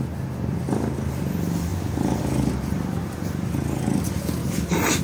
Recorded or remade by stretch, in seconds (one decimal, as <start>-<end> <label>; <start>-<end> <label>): 0.0-5.0 recorded